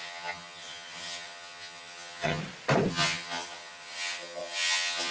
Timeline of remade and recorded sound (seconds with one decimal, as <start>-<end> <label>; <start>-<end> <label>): 0.0-2.4 remade; 2.4-2.9 recorded; 2.9-5.1 remade